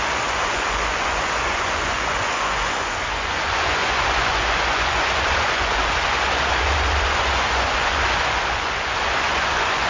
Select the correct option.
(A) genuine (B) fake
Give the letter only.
B